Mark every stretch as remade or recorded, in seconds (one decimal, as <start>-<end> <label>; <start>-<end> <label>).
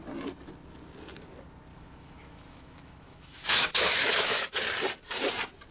0.0-1.7 recorded; 1.7-4.5 remade; 4.5-5.7 recorded